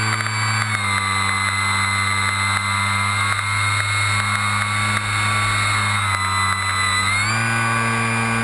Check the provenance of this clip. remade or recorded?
recorded